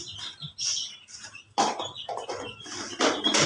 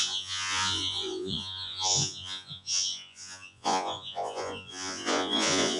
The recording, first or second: first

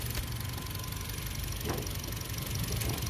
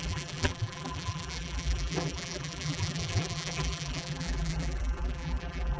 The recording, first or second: first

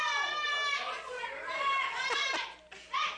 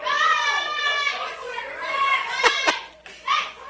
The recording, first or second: first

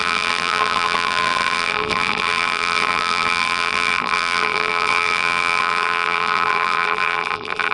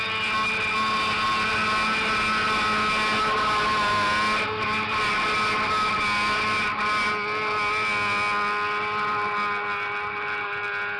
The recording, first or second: second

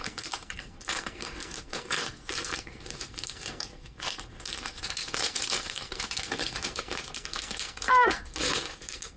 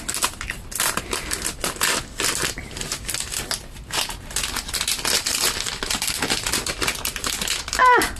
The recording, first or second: second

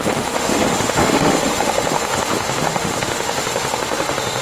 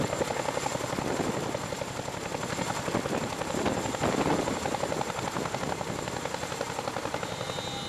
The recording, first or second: second